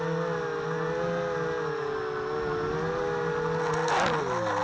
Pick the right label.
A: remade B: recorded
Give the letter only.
B